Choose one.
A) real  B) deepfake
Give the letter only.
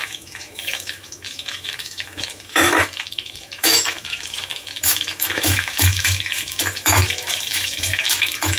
B